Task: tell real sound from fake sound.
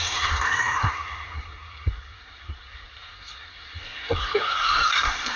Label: fake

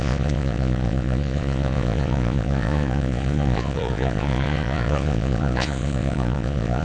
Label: fake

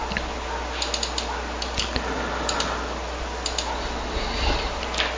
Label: real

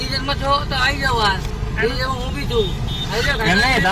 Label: real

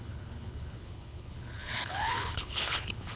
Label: fake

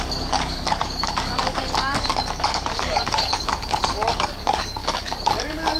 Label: fake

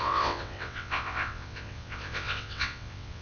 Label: fake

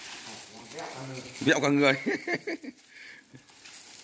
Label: real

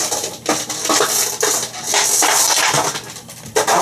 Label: real